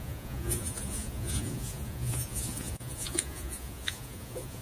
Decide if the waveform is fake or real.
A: fake